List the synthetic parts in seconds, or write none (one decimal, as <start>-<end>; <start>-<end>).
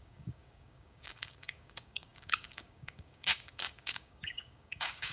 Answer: 0.0-5.1